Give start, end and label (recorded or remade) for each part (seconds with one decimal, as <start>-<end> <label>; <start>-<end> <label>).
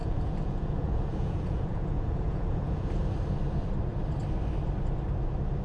0.0-2.9 remade; 2.9-5.6 recorded